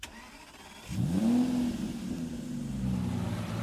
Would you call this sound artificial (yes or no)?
no